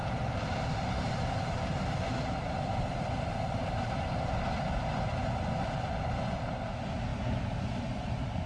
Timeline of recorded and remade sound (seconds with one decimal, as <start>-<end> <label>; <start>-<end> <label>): 0.0-4.1 remade; 4.1-8.5 recorded

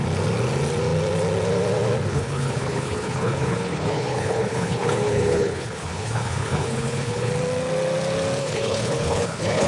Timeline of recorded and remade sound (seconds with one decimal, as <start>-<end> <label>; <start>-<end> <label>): 0.0-2.1 recorded; 2.1-7.3 remade; 7.3-8.4 recorded; 8.4-9.7 remade

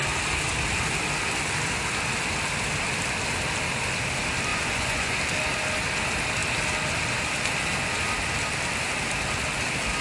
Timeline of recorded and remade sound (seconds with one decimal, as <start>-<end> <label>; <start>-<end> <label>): 0.0-4.5 recorded; 4.5-5.2 remade; 5.2-10.0 recorded

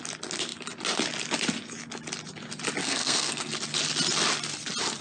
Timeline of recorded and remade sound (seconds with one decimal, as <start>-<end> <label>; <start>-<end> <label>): 0.0-2.8 recorded; 2.8-3.5 remade; 3.5-5.0 recorded